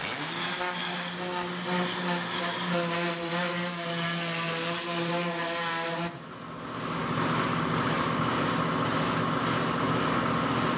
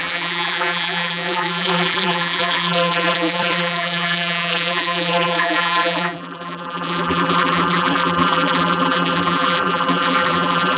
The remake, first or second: second